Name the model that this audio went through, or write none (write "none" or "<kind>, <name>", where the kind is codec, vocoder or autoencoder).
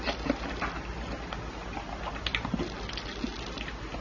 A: none